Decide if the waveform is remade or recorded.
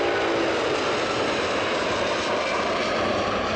recorded